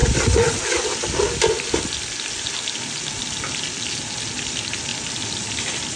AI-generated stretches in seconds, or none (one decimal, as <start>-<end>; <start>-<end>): none